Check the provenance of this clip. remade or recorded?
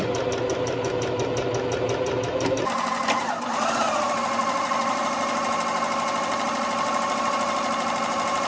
recorded